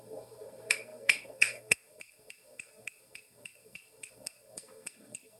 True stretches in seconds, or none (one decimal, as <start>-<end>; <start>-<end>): none